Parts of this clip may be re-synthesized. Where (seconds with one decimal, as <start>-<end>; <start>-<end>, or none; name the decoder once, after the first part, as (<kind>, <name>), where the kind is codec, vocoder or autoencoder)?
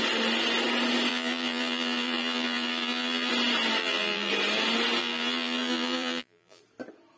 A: 1.1-3.3 (vocoder, BigVGAN v2); 3.8-4.3; 5.0-6.6